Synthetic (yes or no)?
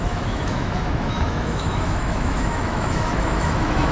yes